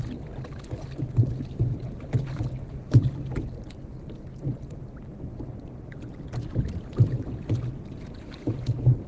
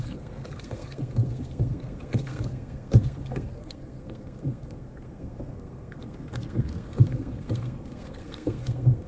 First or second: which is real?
first